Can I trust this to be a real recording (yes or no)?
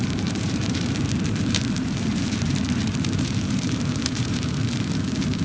no